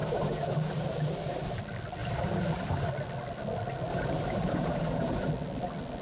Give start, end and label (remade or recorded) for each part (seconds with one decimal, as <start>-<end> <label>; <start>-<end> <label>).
0.0-1.6 remade; 1.6-2.0 recorded; 2.0-2.9 remade; 2.9-3.9 recorded; 3.9-5.3 remade; 5.3-6.0 recorded